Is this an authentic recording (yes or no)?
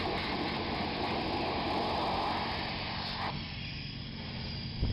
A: yes